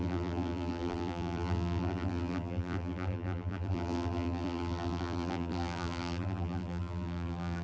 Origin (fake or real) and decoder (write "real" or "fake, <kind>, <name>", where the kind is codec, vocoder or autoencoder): fake, vocoder, BigVGAN v2